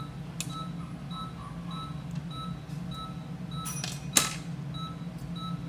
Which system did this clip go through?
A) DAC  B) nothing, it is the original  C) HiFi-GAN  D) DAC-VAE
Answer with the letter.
B